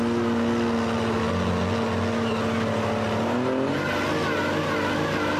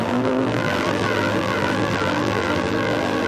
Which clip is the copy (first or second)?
second